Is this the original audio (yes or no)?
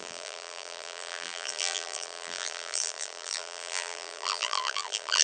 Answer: no